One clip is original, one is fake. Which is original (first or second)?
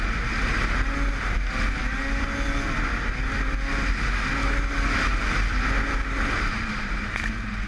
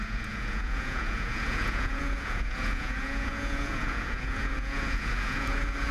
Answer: first